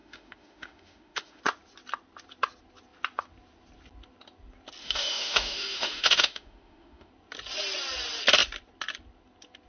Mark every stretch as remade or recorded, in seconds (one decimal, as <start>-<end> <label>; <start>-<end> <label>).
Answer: 0.0-1.4 remade; 1.4-4.8 recorded; 4.8-7.1 remade; 7.1-9.7 recorded